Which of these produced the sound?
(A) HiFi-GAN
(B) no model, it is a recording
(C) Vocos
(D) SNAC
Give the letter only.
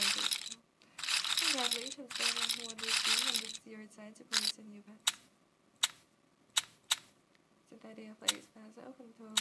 B